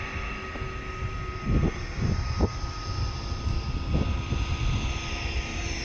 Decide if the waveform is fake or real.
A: real